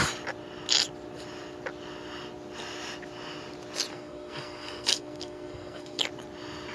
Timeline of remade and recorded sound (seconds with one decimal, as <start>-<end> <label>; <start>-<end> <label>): 0.0-3.9 recorded; 3.9-6.0 remade; 6.0-6.7 recorded